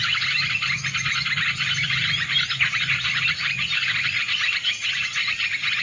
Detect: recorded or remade recorded